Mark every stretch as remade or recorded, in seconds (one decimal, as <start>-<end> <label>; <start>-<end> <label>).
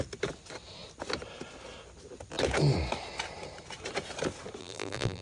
0.0-4.6 recorded; 4.6-5.2 remade